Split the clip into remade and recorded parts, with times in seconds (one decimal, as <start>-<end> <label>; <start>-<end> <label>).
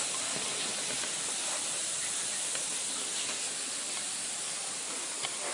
0.0-0.7 remade; 0.7-1.2 recorded; 1.2-5.5 remade